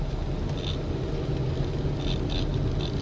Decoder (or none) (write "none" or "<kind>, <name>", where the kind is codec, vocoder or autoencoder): none